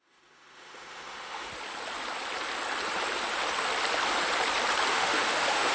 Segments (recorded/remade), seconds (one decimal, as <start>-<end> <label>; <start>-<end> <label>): 0.0-1.5 remade; 1.5-4.9 recorded; 4.9-5.7 remade